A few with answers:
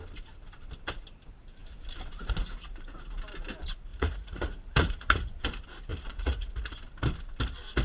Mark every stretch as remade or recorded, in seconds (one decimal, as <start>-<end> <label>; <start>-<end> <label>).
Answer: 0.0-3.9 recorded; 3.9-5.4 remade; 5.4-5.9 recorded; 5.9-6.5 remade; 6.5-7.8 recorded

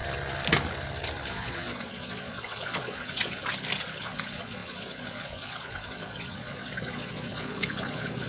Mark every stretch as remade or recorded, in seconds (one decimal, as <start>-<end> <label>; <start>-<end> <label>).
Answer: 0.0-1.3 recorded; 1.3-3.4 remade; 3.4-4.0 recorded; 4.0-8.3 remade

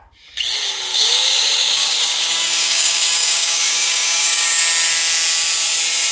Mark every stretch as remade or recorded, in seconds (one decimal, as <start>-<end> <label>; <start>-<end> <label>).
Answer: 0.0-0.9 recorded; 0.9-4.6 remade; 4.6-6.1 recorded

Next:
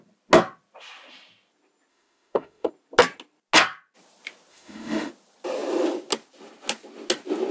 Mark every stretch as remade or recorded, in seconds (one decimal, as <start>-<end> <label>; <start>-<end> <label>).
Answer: 0.0-1.9 recorded; 1.9-2.7 remade; 2.7-4.5 recorded; 4.5-5.1 remade; 5.1-7.5 recorded

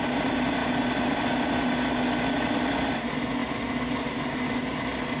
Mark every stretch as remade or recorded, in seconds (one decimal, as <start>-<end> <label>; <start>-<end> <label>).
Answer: 0.0-5.2 recorded

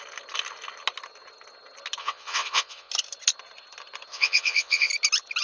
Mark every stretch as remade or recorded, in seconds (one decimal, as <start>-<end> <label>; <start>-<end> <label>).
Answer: 0.0-2.0 recorded; 2.0-2.9 remade; 2.9-4.1 recorded; 4.1-4.9 remade; 4.9-5.4 recorded

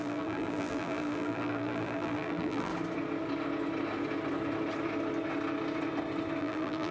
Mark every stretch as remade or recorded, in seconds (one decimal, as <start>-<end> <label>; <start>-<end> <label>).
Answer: 0.0-2.7 remade; 2.7-6.4 recorded; 6.4-6.9 remade